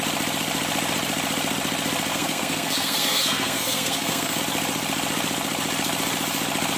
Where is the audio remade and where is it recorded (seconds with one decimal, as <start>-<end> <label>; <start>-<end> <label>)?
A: 0.0-2.1 recorded; 2.1-4.4 remade; 4.4-6.8 recorded